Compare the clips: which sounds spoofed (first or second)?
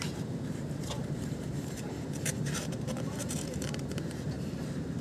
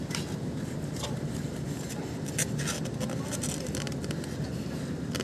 first